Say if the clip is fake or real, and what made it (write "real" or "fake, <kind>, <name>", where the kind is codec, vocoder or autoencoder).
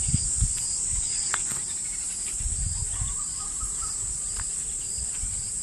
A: fake, vocoder, BigVGAN v2